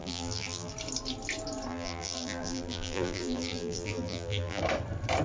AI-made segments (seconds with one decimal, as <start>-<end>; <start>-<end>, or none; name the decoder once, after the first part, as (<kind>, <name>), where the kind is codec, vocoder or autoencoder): 0.0-0.7 (vocoder, BigVGAN v2); 1.7-4.6